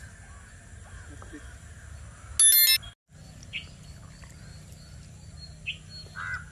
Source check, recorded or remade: recorded